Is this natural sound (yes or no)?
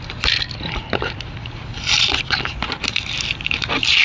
no